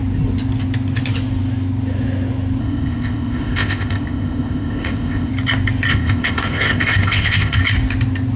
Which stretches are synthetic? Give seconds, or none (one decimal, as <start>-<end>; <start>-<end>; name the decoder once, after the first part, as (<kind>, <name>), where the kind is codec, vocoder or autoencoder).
2.6-5.3 (codec, ZipCodec); 5.9-7.6